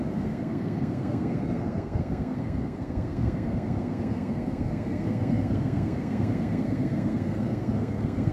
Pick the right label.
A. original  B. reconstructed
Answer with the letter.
B